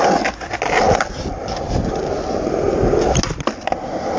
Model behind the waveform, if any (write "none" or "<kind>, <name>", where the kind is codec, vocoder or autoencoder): none